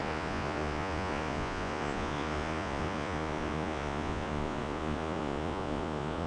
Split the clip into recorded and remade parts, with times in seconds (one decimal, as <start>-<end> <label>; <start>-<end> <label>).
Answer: 0.0-6.3 remade